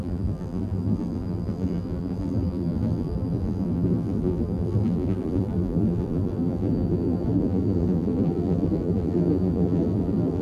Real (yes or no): no